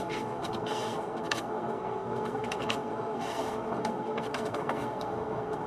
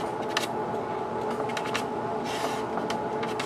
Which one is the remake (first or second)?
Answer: first